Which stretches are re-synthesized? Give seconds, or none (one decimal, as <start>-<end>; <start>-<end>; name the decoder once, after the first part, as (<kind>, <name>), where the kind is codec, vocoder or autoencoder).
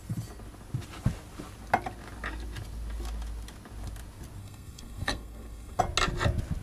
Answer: 4.4-5.8 (codec, SNAC)